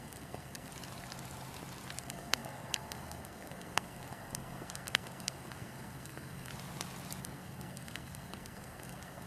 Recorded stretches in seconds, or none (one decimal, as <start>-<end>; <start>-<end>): 0.7-2.0; 6.5-7.2